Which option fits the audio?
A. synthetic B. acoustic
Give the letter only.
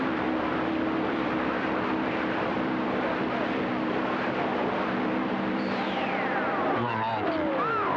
A